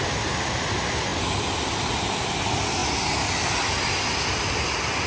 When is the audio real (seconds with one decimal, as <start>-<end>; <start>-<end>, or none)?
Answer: 0.0-5.1